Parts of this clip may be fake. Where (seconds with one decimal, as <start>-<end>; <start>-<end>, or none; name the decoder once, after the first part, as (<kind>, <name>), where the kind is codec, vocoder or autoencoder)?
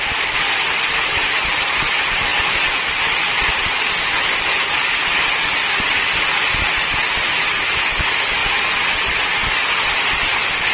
none